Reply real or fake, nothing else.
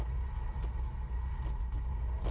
real